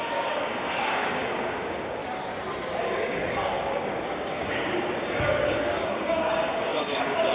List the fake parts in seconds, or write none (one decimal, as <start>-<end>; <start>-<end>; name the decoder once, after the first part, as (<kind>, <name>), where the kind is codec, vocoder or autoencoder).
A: 0.0-2.0 (codec, DAC); 2.8-7.3